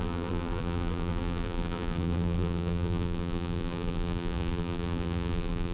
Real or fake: fake